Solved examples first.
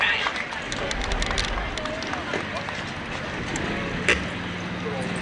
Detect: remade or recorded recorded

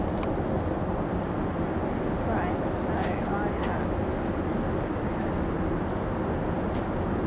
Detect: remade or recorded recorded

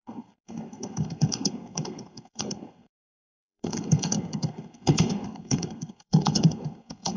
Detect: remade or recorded remade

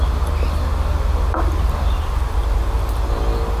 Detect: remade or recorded recorded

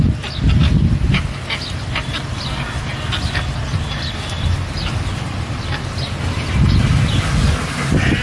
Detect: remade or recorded recorded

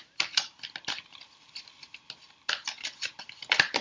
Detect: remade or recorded recorded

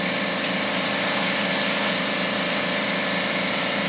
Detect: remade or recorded recorded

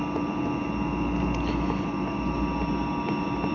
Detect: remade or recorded recorded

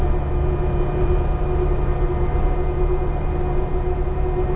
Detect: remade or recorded recorded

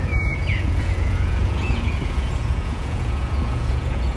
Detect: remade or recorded remade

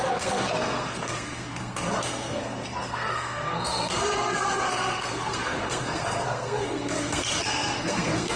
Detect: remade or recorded remade